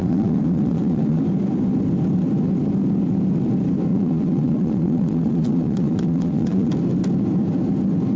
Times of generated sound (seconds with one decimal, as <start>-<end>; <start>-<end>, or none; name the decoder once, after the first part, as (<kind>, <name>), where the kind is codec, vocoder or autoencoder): 0.0-1.2 (vocoder, Vocos); 3.9-6.7